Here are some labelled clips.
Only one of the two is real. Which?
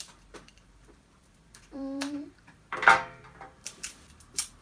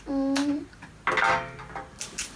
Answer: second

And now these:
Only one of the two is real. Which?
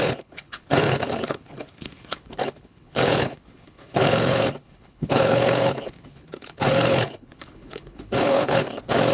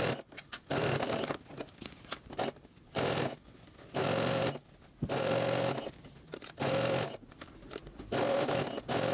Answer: second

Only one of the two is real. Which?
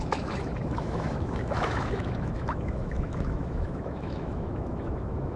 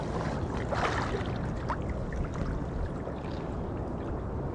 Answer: second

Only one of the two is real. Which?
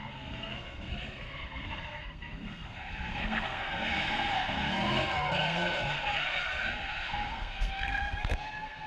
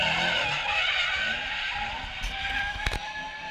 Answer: second